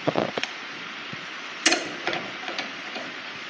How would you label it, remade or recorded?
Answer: remade